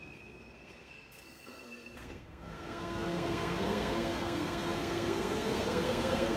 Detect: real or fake fake